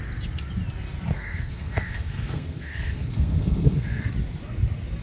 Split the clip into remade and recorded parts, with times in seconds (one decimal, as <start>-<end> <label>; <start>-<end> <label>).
0.0-1.1 recorded; 1.1-4.1 remade; 4.1-5.0 recorded